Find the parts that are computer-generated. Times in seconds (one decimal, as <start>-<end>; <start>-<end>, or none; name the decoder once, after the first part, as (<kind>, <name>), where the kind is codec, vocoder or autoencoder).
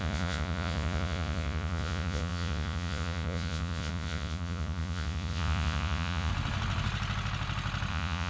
0.0-6.3 (vocoder, Vocos); 7.9-8.3